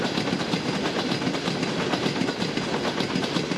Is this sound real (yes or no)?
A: yes